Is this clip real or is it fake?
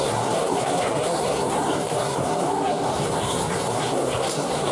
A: fake